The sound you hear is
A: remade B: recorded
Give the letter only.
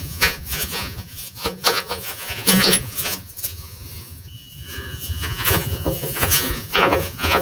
A